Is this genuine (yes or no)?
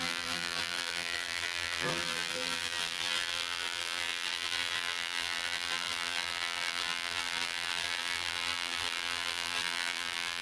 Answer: no